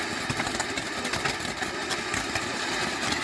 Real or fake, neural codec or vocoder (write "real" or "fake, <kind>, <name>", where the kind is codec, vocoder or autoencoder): real